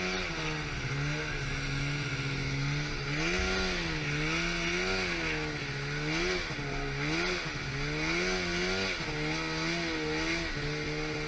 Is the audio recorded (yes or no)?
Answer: yes